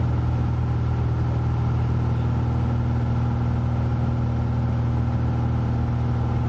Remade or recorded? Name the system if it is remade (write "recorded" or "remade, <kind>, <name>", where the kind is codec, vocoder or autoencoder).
recorded